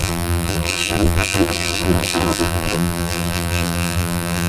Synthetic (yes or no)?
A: yes